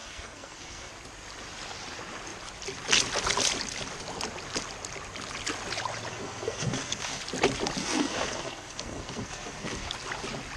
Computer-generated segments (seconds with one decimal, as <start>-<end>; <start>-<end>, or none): 0.0-0.9; 6.1-7.2; 7.8-9.9